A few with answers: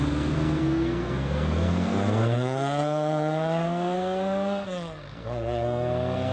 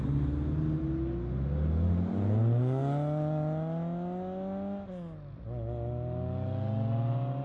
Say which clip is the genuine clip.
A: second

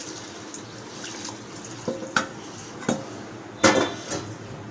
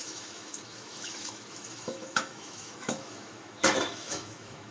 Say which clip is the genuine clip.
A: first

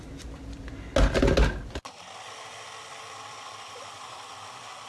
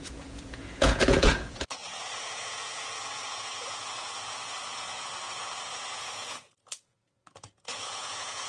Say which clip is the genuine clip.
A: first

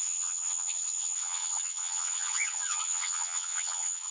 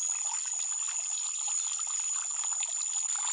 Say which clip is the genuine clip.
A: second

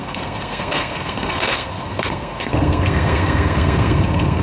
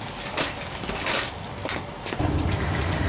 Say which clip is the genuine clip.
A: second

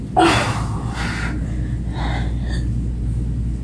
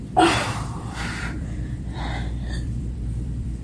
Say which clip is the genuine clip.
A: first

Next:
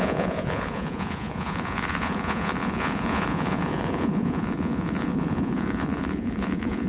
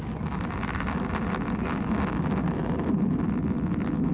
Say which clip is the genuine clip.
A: second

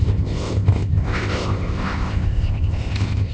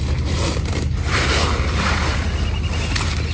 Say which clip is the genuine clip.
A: second